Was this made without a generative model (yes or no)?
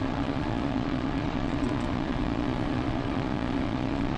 no